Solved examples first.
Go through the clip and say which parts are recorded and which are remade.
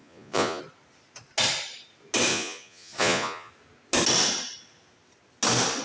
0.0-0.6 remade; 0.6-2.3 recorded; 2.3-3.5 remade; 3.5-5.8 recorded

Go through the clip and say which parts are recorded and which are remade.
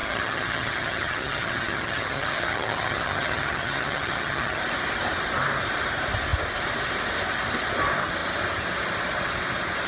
0.0-4.6 remade; 4.6-9.9 recorded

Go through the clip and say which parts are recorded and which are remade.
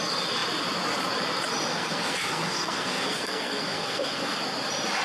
0.0-1.7 recorded; 1.7-4.4 remade; 4.4-5.0 recorded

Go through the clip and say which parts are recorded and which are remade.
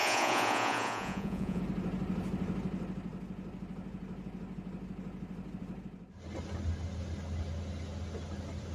0.0-1.6 remade; 1.6-8.7 recorded